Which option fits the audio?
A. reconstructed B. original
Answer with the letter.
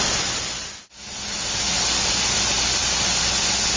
B